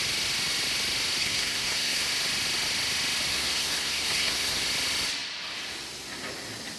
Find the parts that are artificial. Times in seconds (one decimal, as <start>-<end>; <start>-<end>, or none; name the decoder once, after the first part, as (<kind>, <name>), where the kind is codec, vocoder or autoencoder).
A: 1.2-2.1 (codec, SNAC); 3.3-4.6